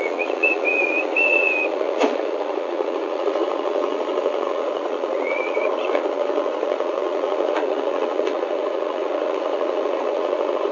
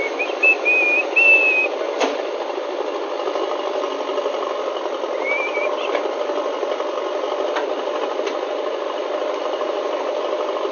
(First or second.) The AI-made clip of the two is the first